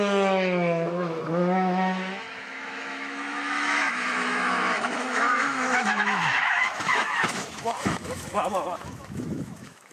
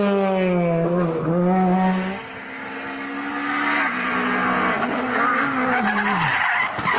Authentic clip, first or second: second